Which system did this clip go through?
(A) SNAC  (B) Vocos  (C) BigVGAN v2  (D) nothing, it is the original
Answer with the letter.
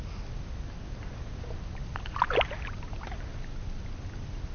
D